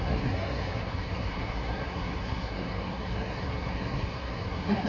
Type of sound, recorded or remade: remade